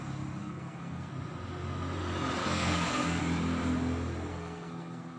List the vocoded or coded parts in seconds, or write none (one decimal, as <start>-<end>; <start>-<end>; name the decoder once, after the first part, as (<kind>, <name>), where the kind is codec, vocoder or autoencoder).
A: 0.4-1.1 (codec, SNAC); 2.4-3.2; 4.3-5.2

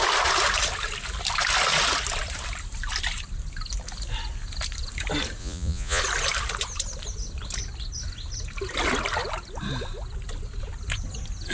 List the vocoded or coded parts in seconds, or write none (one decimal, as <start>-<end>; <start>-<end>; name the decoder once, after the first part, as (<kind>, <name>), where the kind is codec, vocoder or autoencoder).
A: 5.4-6.0 (vocoder, Vocos)

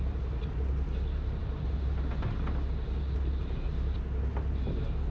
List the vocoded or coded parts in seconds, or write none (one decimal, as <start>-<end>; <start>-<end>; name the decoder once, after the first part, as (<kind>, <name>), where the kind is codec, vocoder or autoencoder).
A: none

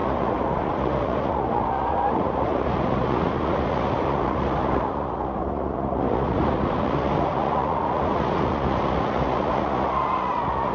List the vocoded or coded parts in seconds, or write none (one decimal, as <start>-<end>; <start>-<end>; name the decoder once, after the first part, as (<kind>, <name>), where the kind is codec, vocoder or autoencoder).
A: 0.0-10.7 (vocoder, Vocos)

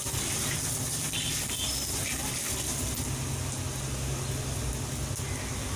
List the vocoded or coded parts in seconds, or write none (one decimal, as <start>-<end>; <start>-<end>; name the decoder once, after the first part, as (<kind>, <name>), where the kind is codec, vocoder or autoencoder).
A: none

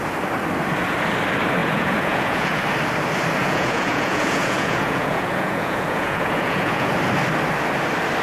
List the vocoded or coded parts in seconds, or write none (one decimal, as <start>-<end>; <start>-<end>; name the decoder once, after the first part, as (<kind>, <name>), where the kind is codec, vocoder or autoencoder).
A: 1.6-2.6 (vocoder, Vocos); 3.4-6.9